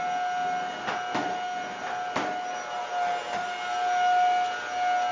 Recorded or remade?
recorded